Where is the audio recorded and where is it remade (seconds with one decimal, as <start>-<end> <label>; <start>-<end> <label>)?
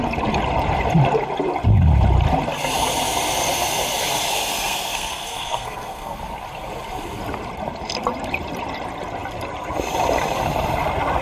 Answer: 0.0-4.3 recorded; 4.3-6.2 remade; 6.2-11.2 recorded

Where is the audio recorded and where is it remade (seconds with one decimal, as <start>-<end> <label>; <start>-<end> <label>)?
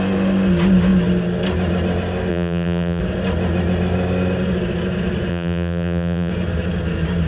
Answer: 0.0-2.3 recorded; 2.3-3.0 remade; 3.0-5.3 recorded; 5.3-6.3 remade; 6.3-7.3 recorded